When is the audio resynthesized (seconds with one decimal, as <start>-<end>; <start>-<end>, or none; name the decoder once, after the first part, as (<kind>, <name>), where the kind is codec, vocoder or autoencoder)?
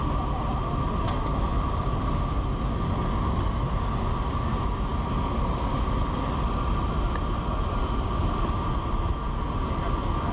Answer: none